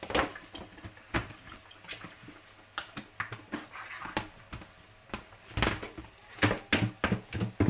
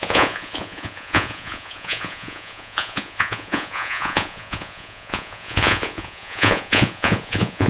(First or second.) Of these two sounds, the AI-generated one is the second